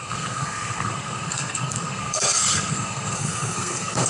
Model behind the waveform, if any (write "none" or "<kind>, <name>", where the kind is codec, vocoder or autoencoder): codec, SNAC